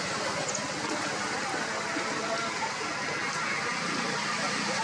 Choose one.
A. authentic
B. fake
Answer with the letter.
A